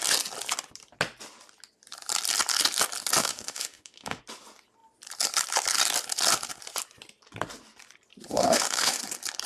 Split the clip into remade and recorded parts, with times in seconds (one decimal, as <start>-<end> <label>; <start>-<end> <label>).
0.0-3.2 recorded; 3.2-4.2 remade; 4.2-8.3 recorded; 8.3-9.0 remade; 9.0-9.5 recorded